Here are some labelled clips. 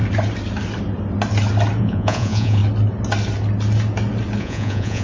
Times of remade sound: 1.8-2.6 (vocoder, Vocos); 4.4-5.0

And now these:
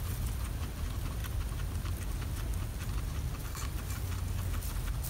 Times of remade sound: none